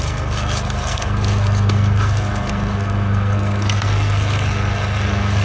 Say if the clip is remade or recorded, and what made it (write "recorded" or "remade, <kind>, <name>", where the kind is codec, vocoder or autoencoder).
remade, codec, SNAC